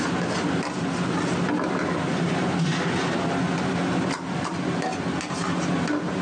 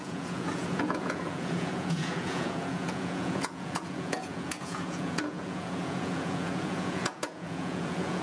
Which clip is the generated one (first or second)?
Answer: second